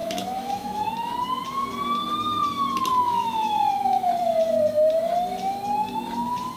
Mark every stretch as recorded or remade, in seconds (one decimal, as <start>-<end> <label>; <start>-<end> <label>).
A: 0.0-0.9 remade; 0.9-2.9 recorded; 2.9-4.1 remade; 4.1-6.6 recorded